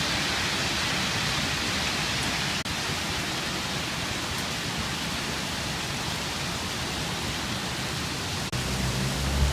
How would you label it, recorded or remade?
recorded